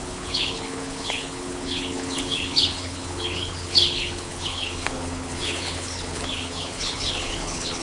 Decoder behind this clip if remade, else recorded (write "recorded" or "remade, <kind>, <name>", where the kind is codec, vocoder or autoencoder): remade, codec, HILCodec